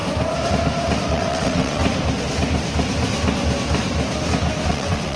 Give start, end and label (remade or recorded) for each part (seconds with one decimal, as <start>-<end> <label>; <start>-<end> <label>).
0.0-1.1 recorded; 1.1-1.8 remade; 1.8-4.7 recorded; 4.7-5.2 remade